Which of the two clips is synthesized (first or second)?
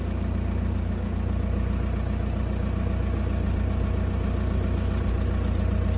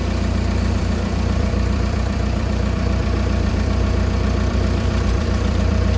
second